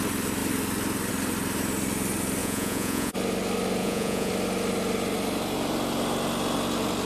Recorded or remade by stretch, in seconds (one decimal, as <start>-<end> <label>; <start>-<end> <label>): 0.0-2.4 recorded; 2.4-3.1 remade; 3.1-3.8 recorded; 3.8-4.3 remade; 4.3-7.1 recorded